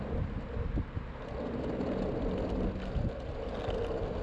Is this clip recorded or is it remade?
recorded